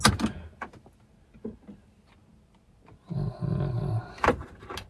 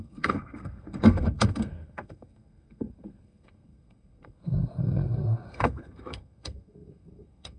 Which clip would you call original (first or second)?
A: first